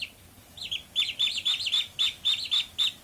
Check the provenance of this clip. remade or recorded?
recorded